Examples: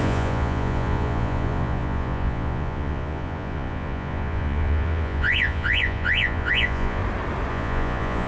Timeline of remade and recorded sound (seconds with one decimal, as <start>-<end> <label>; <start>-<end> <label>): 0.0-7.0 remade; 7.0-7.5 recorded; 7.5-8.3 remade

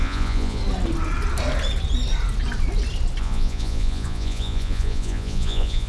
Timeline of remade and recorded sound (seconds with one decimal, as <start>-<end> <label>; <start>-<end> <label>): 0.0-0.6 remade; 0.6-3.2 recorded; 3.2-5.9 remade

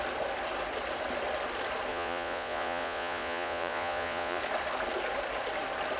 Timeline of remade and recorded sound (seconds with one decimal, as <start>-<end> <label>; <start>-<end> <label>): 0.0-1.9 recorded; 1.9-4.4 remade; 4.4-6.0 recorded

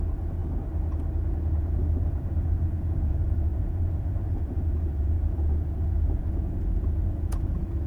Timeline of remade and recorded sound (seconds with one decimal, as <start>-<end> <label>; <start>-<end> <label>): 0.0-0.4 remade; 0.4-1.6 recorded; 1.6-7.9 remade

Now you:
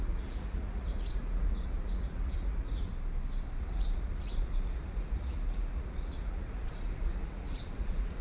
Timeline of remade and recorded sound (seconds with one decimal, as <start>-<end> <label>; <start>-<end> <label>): 0.0-2.9 remade; 2.9-3.6 recorded; 3.6-8.2 remade

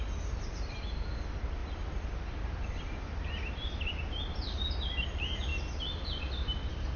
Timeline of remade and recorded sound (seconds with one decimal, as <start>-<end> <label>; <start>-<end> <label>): 0.0-7.0 recorded